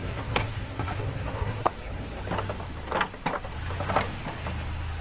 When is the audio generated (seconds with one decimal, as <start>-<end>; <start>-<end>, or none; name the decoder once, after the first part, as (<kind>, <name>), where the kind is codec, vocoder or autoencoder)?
0.0-2.2 (codec, SNAC)